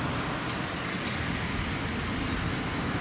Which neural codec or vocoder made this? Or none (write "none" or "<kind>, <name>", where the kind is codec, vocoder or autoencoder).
none